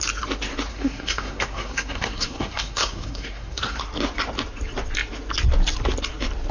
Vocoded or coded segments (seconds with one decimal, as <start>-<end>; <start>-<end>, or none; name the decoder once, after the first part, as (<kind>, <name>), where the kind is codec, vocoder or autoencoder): 0.7-3.8 (codec, SNAC)